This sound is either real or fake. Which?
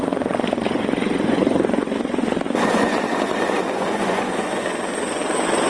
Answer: fake